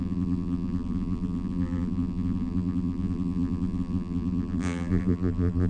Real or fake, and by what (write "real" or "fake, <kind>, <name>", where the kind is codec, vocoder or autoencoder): fake, vocoder, BigVGAN v2